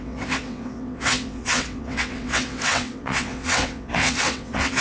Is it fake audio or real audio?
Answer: fake